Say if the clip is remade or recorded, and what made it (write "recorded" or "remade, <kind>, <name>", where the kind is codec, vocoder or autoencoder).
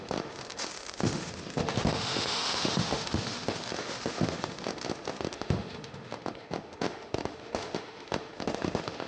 remade, autoencoder, DAC-VAE